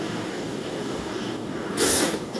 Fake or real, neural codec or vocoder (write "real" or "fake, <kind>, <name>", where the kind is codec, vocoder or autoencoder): fake, codec, DAC